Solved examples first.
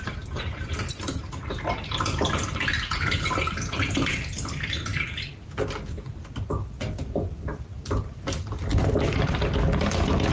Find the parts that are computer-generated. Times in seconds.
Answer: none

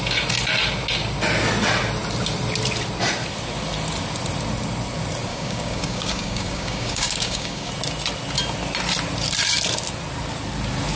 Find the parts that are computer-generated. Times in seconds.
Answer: 5.3-7.7 (codec, DAC)

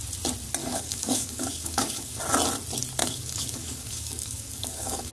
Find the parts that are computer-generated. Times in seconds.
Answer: 0.6-2.2 (codec, DAC); 3.0-5.1

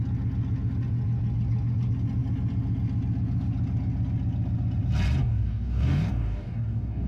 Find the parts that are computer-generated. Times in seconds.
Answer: 5.2-7.1 (codec, DAC)